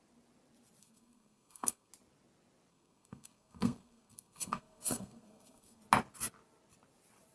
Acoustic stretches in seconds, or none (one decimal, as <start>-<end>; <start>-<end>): 0.0-0.8; 1.9-2.7; 5.8-7.3